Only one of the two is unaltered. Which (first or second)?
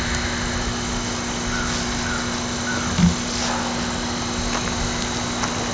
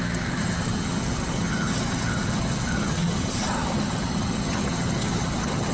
first